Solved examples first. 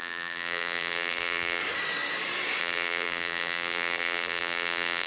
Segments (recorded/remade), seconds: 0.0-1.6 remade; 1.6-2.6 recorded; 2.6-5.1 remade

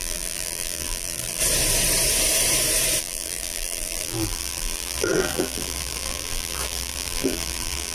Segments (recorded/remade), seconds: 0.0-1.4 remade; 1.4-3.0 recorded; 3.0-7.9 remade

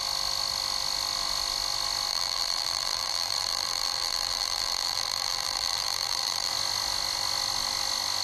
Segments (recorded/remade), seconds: 0.0-2.1 recorded; 2.1-6.5 remade; 6.5-8.2 recorded

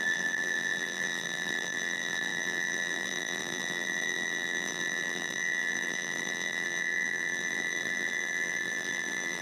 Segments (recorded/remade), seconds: 0.0-9.4 remade

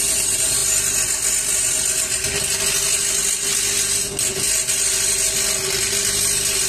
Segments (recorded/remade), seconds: 0.0-6.7 recorded

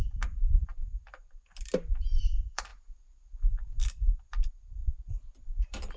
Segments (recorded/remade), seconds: 0.0-0.7 remade; 0.7-2.2 recorded; 2.2-2.7 remade; 2.7-3.8 recorded; 3.8-4.8 remade; 4.8-5.3 recorded; 5.3-6.0 remade

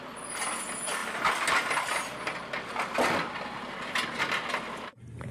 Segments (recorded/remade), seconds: 0.0-5.3 recorded